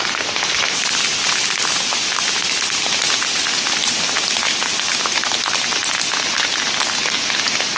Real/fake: real